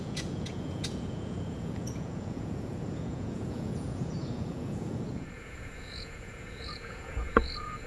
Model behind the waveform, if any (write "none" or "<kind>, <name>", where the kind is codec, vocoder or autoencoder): vocoder, Vocos